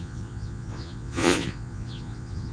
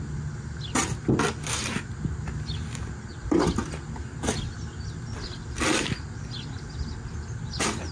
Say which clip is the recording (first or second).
second